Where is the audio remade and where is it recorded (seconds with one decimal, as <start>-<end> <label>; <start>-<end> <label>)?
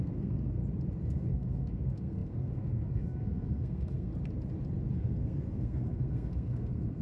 0.0-0.6 remade; 0.6-1.1 recorded; 1.1-4.1 remade; 4.1-4.9 recorded; 4.9-7.0 remade